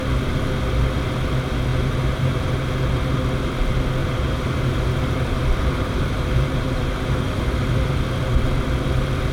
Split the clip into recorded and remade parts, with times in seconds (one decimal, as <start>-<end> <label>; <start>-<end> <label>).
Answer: 0.0-1.7 recorded; 1.7-2.5 remade; 2.5-4.0 recorded; 4.0-8.4 remade; 8.4-9.3 recorded